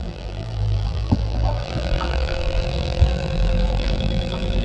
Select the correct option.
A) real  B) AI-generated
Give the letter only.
B